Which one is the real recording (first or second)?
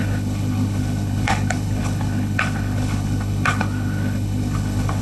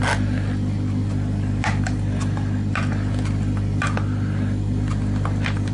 second